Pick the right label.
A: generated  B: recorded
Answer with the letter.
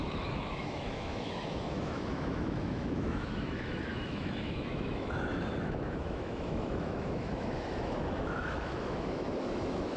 A